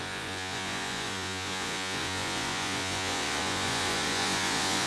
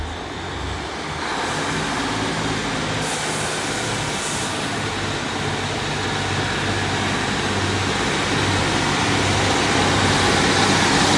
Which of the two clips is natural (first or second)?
second